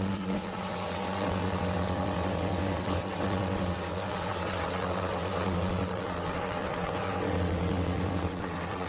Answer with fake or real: fake